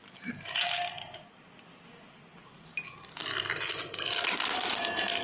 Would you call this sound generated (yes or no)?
no